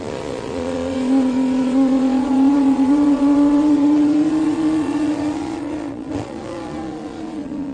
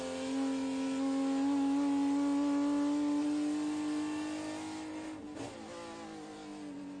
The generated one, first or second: first